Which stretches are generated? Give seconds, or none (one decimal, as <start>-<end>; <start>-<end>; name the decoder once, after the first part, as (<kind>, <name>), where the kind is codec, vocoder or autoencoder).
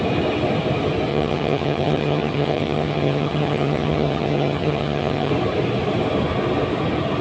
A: 1.1-5.3 (vocoder, HiFi-GAN)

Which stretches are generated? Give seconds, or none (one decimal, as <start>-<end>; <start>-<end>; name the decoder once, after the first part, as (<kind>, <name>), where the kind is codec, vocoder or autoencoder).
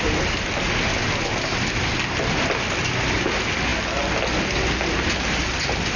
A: none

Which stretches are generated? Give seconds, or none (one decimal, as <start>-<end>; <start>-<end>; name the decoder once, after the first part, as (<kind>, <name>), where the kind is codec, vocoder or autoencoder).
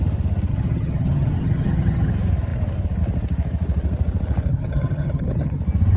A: 0.5-2.1 (vocoder, HiFi-GAN); 4.5-5.6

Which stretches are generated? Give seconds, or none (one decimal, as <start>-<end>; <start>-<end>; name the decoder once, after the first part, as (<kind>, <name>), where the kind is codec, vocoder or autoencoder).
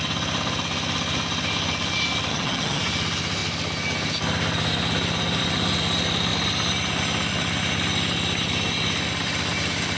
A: 2.3-2.8 (vocoder, HiFi-GAN)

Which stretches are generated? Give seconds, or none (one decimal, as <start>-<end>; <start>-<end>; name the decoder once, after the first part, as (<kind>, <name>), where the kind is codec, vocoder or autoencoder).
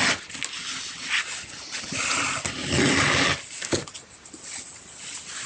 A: none